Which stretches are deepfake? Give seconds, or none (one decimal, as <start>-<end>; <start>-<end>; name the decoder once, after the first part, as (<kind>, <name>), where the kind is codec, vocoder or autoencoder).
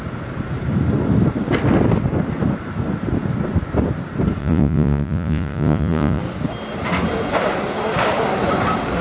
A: 4.4-6.2 (vocoder, Vocos)